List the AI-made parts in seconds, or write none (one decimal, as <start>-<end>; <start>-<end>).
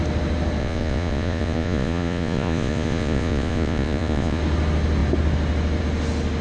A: 0.6-4.4